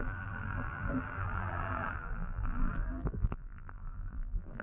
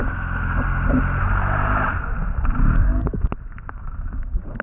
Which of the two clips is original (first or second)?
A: second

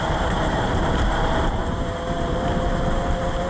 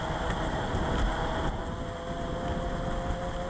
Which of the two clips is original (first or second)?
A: second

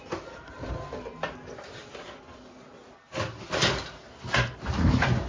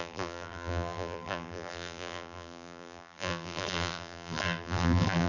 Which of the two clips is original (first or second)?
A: first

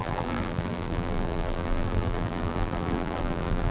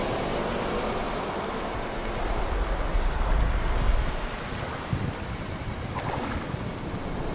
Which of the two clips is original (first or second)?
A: second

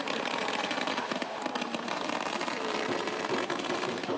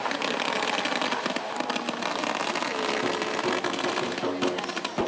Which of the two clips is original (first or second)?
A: second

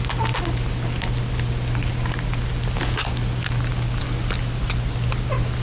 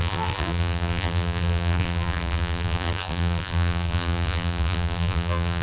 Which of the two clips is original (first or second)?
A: first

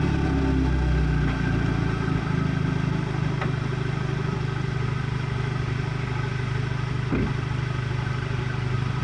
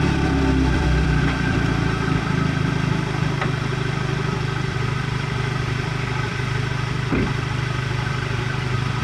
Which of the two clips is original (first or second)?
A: first